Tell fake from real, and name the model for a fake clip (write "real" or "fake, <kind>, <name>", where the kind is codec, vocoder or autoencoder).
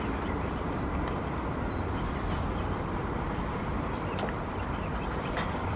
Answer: fake, vocoder, BigVGAN v2